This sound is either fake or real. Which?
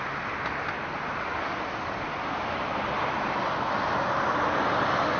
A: real